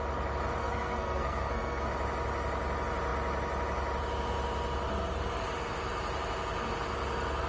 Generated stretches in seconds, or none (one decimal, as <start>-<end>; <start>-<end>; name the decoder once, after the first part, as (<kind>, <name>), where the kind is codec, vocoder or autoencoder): 0.6-1.9 (codec, SNAC)